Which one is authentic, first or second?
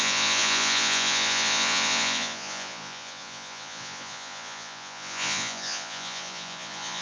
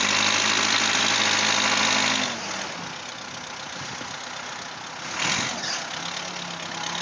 second